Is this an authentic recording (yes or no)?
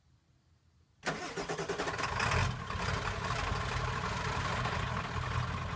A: yes